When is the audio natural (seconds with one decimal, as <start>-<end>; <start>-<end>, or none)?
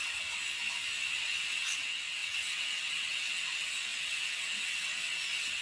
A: 0.4-1.2